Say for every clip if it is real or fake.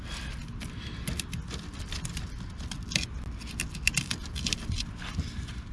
real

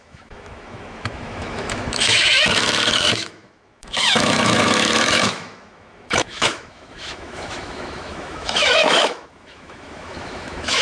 fake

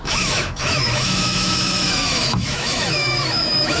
fake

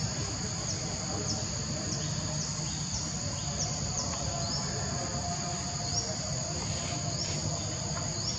real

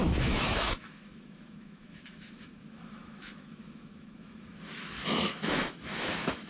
fake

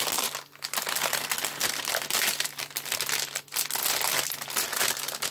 real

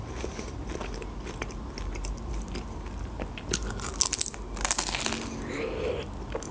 real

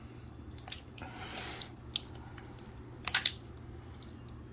real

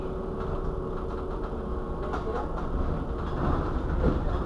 real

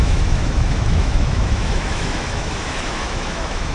fake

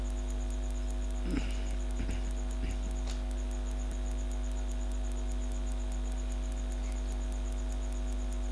real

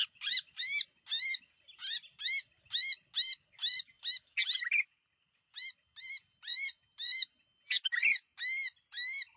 real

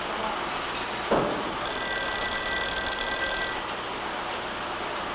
real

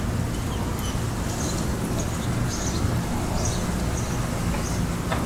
real